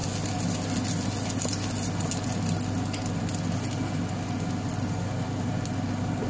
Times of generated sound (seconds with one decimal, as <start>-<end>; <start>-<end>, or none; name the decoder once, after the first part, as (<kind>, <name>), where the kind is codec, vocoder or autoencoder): none